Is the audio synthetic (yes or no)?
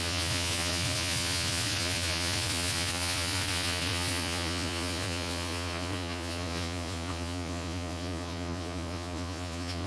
yes